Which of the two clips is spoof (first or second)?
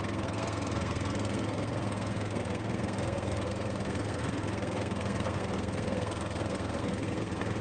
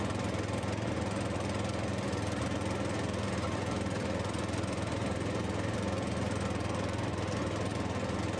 first